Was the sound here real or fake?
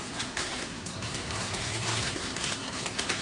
fake